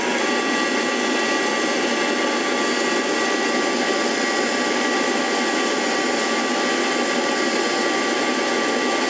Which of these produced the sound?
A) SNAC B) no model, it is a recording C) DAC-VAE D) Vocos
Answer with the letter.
B